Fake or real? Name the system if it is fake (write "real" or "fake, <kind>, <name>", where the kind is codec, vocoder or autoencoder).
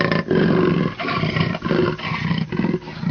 real